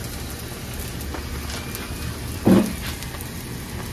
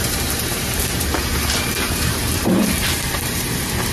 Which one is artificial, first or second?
second